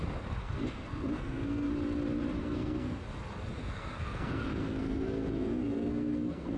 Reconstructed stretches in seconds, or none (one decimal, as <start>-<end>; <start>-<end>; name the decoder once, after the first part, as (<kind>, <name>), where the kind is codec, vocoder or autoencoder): 0.4-1.7 (codec, SNAC); 2.4-3.0; 3.6-6.6